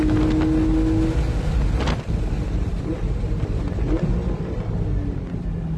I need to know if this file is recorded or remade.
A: recorded